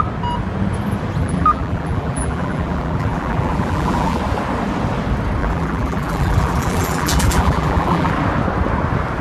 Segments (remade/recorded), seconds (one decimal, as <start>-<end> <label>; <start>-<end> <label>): 0.0-1.2 recorded; 1.2-4.2 remade; 4.2-5.4 recorded; 5.4-8.1 remade; 8.1-9.2 recorded